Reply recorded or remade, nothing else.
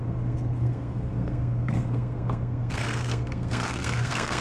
remade